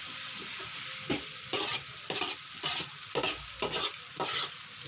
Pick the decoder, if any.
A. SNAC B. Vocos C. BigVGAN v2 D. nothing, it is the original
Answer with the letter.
D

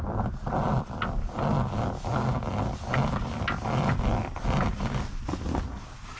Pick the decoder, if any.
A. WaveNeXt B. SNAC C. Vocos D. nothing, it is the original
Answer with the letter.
D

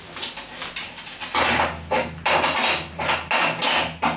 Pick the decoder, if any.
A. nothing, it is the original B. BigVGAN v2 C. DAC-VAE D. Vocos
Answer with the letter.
A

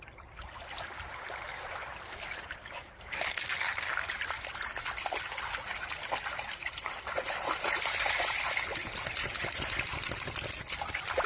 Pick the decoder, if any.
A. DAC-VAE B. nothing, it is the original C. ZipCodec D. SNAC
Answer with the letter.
B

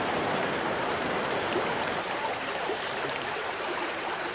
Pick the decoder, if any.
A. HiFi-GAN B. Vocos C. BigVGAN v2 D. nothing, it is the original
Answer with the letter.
C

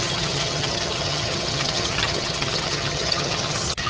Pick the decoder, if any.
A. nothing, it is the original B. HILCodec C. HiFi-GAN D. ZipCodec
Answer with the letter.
C